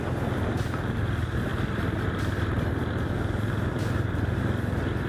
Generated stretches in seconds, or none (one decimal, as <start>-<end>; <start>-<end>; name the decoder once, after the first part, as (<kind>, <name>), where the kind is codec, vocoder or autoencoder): none